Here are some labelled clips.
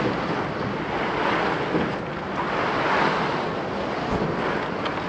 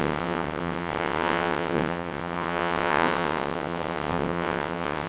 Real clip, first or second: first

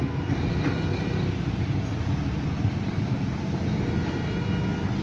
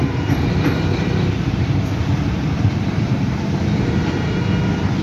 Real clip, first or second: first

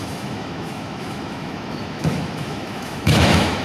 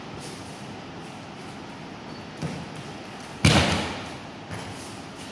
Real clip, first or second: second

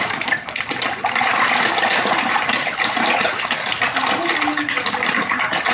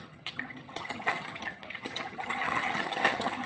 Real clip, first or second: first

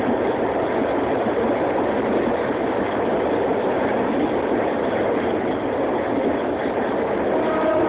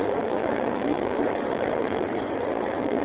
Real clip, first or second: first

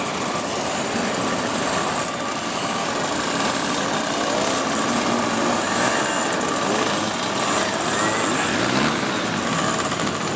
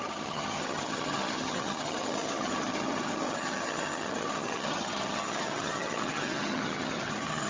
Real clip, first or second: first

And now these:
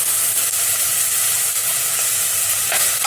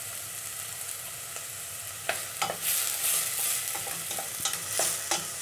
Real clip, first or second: second